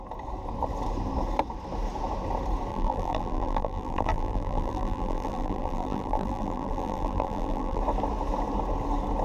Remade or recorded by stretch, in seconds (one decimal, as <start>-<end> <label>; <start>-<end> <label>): 0.0-2.7 recorded; 2.7-7.8 remade; 7.8-9.2 recorded